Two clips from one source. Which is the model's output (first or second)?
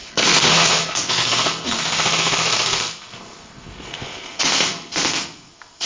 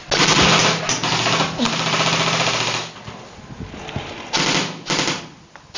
first